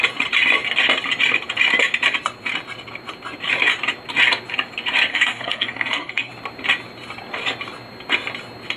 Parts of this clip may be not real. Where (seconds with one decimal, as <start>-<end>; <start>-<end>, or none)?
5.1-6.3